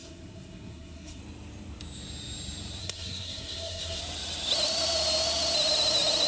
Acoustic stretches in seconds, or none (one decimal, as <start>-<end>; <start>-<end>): 1.2-2.8; 4.0-6.3